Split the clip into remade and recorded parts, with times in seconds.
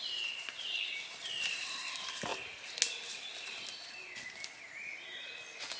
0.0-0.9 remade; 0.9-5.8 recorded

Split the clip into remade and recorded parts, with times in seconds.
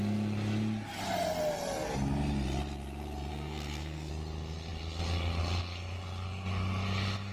0.0-3.3 recorded; 3.3-4.1 remade; 4.1-7.3 recorded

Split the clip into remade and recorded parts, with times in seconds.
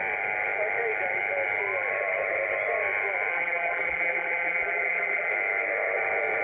0.0-3.3 recorded; 3.3-5.3 remade; 5.3-6.4 recorded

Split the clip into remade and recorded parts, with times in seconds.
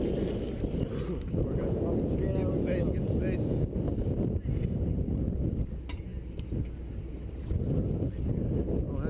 0.0-9.1 recorded